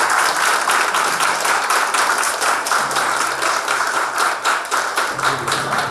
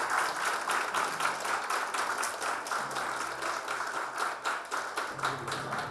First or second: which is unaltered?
second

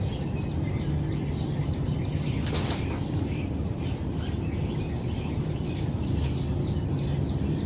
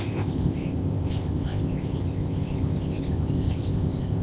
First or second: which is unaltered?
first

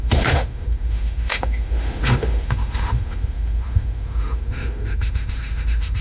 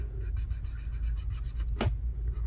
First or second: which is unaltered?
second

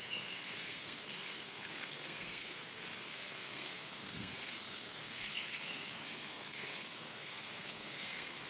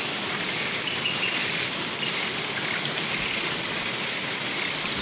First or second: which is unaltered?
second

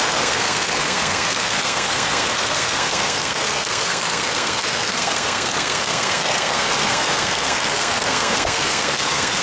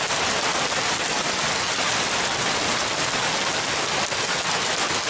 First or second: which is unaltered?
second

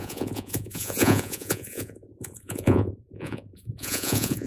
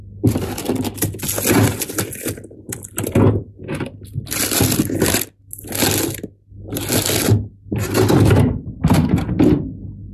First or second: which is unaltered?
second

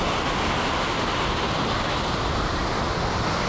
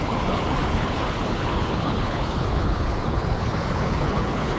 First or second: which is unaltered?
first